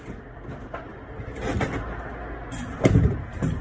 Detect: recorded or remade recorded